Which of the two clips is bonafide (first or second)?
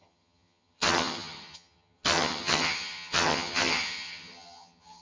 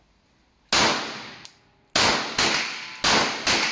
second